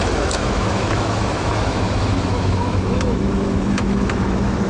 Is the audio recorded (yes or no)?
no